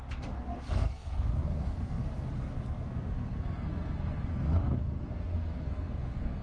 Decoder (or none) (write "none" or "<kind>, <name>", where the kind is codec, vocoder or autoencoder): codec, SNAC